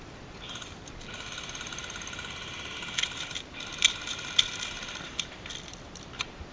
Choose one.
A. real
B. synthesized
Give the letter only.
B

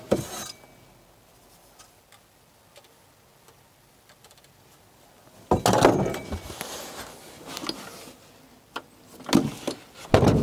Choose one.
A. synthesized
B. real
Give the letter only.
B